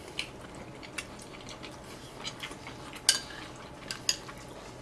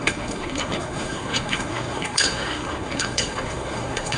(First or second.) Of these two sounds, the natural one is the first